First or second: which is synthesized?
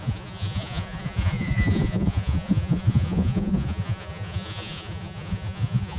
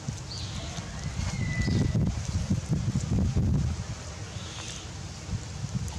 first